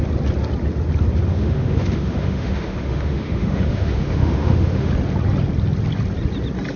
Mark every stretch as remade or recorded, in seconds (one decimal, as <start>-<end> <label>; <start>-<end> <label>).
0.0-1.3 recorded; 1.3-4.9 remade; 4.9-6.8 recorded